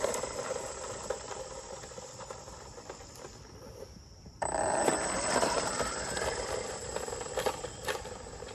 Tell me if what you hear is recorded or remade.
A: remade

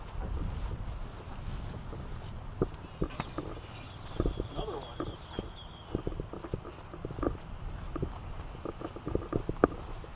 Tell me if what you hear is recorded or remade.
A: recorded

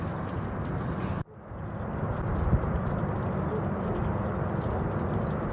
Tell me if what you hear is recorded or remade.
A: recorded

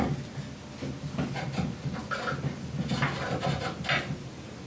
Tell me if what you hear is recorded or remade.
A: recorded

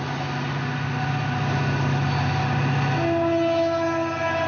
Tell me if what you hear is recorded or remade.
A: recorded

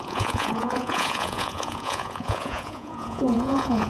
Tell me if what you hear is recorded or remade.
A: remade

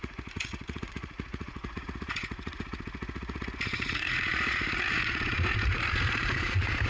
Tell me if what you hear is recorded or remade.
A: remade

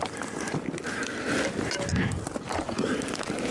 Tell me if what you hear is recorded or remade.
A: recorded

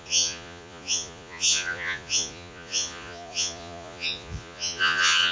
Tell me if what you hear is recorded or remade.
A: remade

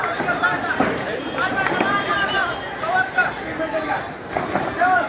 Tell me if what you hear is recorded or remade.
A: remade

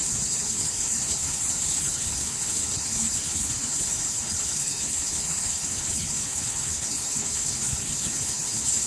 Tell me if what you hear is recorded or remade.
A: remade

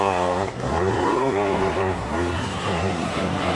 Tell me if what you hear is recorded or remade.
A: remade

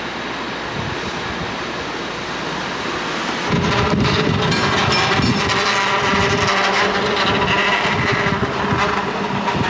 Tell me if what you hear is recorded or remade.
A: recorded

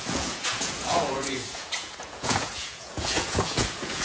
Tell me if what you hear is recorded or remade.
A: remade